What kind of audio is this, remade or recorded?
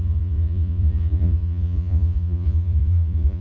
remade